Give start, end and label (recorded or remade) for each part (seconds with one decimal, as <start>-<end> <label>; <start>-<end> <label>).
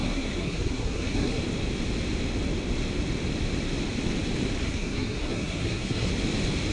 0.0-1.4 remade; 1.4-4.6 recorded; 4.6-6.1 remade; 6.1-6.7 recorded